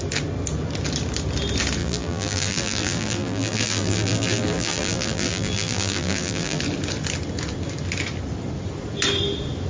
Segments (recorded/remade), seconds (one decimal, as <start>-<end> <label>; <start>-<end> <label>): 0.0-1.8 recorded; 1.8-6.6 remade; 6.6-9.7 recorded